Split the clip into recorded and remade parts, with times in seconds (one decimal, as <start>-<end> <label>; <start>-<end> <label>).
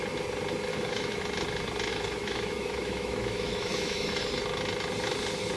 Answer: 0.0-0.7 recorded; 0.7-1.2 remade; 1.2-1.9 recorded; 1.9-4.2 remade; 4.2-5.6 recorded